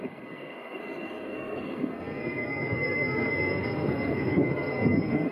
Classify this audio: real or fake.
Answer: fake